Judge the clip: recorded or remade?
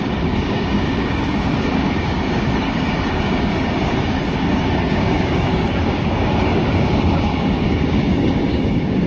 remade